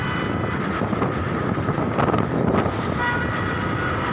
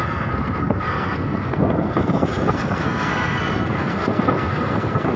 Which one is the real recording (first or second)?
first